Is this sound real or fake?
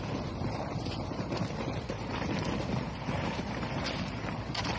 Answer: fake